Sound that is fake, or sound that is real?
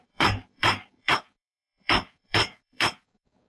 fake